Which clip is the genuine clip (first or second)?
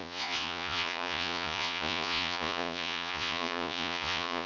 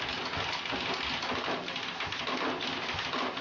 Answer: second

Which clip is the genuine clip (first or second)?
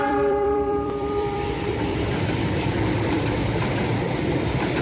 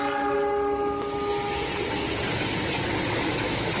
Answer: second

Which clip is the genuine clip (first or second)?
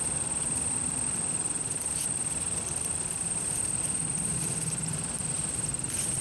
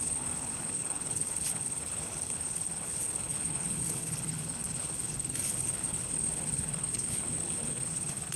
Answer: first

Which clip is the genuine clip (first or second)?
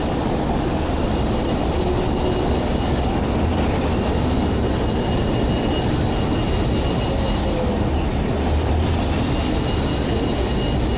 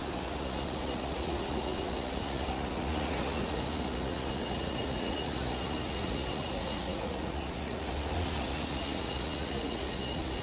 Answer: first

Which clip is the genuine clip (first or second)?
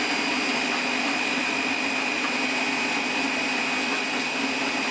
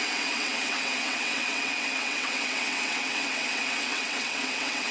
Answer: first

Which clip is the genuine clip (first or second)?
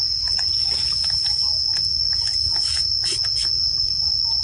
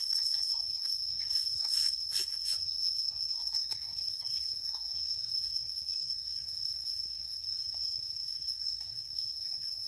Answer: first